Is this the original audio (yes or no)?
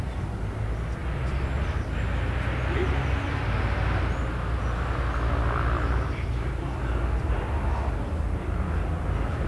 yes